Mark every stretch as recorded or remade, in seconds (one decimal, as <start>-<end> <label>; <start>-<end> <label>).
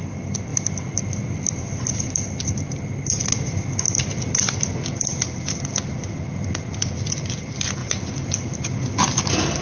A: 0.0-0.5 recorded; 0.5-4.4 remade; 4.4-5.1 recorded; 5.1-5.8 remade; 5.8-9.6 recorded